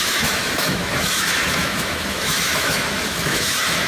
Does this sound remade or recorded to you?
remade